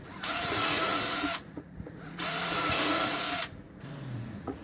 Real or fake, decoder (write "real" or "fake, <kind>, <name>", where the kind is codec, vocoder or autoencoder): fake, vocoder, Vocos